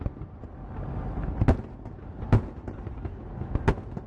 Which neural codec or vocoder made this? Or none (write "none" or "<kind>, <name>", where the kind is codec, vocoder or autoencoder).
none